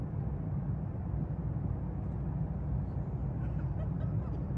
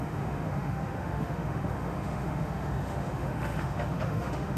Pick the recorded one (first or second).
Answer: first